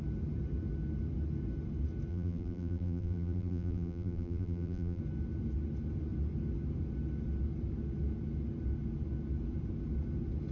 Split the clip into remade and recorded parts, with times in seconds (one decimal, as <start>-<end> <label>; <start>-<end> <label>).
0.0-2.1 recorded; 2.1-5.0 remade; 5.0-10.5 recorded